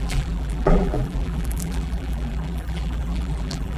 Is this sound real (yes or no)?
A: no